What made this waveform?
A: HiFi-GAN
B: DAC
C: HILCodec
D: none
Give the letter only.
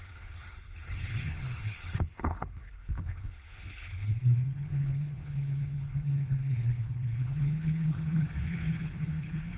C